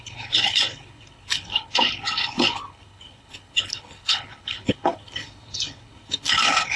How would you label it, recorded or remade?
remade